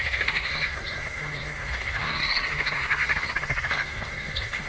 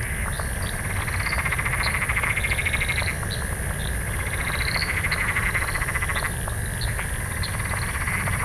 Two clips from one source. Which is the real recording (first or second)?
second